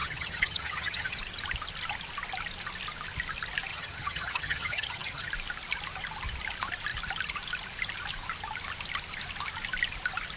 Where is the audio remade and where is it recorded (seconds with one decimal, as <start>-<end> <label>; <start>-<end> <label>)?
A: 0.0-1.2 remade; 1.2-3.7 recorded; 3.7-5.3 remade; 5.3-10.4 recorded